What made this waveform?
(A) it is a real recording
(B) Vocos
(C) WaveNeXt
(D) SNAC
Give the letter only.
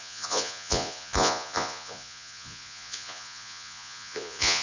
B